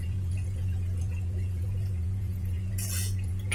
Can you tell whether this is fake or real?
fake